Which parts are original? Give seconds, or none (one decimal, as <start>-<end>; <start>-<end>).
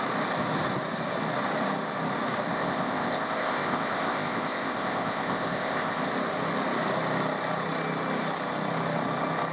0.0-2.5; 6.0-9.5